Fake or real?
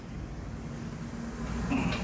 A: real